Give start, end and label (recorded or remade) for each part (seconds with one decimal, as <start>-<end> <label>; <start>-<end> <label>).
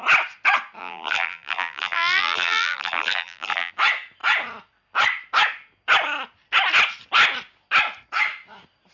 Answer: 0.0-0.8 recorded; 0.8-3.7 remade; 3.7-8.9 recorded